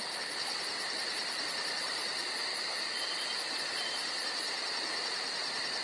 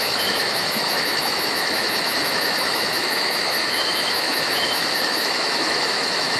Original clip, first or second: first